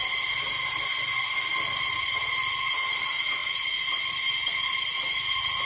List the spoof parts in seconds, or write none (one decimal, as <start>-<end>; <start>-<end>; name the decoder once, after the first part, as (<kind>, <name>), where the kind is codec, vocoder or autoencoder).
2.5-5.7 (vocoder, Vocos)